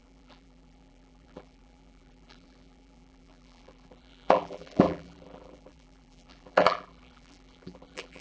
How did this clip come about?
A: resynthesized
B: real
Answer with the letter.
A